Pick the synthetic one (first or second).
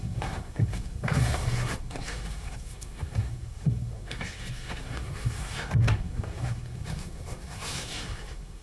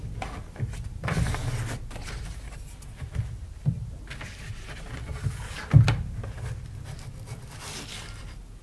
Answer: first